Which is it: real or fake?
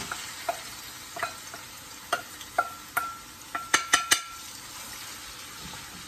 real